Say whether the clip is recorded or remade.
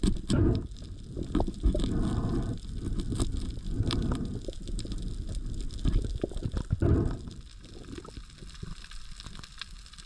recorded